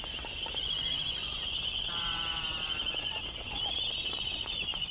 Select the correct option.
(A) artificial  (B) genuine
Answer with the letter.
A